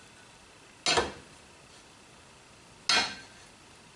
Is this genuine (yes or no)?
yes